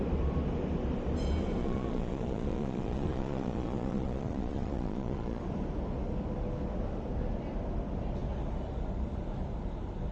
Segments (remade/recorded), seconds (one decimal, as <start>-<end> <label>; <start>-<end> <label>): 0.0-1.6 recorded; 1.6-5.4 remade; 5.4-10.1 recorded